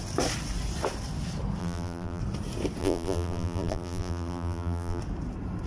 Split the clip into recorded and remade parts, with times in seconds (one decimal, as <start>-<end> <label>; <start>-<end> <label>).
0.0-1.6 recorded; 1.6-2.2 remade; 2.2-2.8 recorded; 2.8-5.0 remade; 5.0-5.7 recorded